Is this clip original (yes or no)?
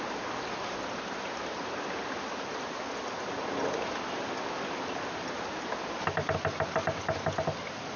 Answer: yes